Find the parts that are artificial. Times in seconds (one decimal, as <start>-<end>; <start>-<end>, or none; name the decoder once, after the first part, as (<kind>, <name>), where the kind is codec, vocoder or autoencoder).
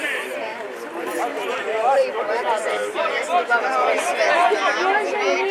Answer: 1.3-4.3 (vocoder, BigVGAN v2)